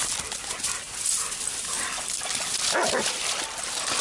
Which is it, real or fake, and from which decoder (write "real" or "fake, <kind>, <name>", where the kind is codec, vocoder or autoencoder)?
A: real